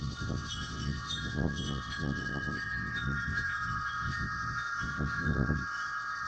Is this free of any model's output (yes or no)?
no